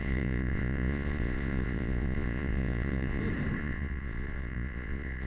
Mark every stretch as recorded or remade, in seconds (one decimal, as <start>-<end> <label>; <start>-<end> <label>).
0.0-3.2 remade; 3.2-3.6 recorded; 3.6-5.3 remade